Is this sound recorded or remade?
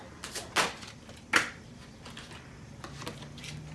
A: recorded